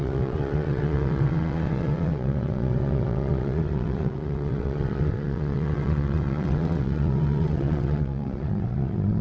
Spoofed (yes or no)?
yes